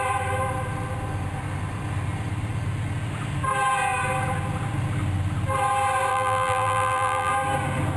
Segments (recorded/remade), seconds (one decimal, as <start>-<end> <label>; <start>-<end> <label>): 0.0-6.1 recorded; 6.1-7.3 remade; 7.3-8.0 recorded